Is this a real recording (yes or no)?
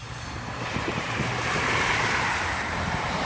no